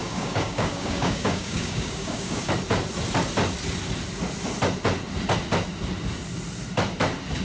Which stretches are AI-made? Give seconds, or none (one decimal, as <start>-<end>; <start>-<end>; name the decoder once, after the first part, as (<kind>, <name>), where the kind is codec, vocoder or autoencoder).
0.0-2.5 (codec, DAC)